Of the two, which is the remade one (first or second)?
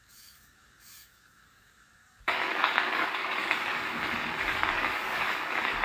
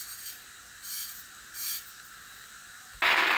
first